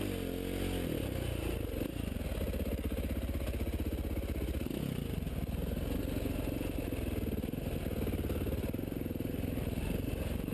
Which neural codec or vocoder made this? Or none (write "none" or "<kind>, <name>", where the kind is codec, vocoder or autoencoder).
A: none